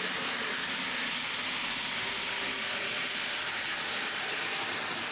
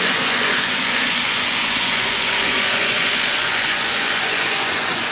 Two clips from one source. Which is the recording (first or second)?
first